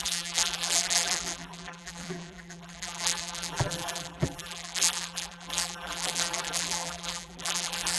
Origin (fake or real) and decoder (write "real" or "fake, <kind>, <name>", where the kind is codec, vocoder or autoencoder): fake, vocoder, BigVGAN v2